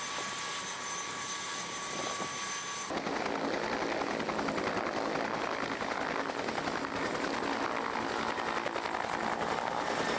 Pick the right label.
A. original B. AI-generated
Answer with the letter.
A